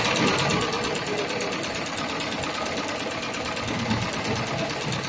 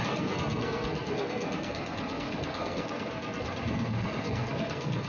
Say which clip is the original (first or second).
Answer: first